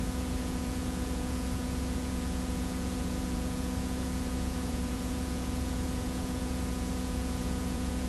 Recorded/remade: remade